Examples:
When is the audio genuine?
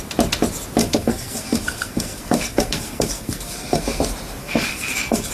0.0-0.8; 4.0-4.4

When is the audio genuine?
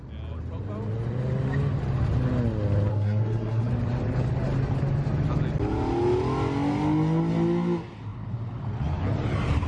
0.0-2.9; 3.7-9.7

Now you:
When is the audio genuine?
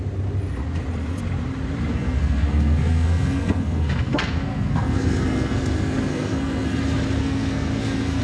0.0-1.9; 6.8-7.2